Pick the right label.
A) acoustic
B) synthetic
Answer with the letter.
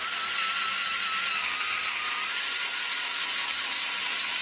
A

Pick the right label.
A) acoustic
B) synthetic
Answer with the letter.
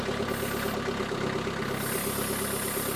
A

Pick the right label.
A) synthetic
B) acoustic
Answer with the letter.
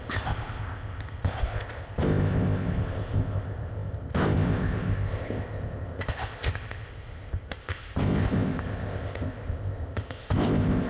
A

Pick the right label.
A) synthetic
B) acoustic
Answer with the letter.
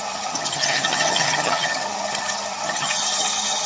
A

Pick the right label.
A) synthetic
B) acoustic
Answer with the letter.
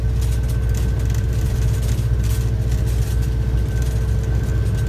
B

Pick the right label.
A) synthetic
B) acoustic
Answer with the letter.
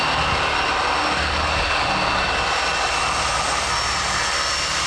B